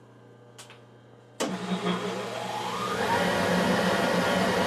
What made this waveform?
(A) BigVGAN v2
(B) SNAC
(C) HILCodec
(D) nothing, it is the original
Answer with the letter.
D